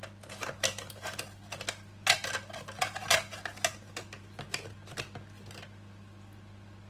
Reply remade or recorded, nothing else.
recorded